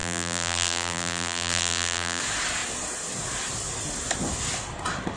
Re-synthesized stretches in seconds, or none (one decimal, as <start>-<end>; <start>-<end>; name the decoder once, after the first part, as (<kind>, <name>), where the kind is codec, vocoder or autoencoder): 0.0-2.2 (vocoder, BigVGAN v2)